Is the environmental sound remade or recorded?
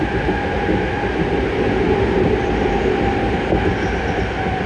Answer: recorded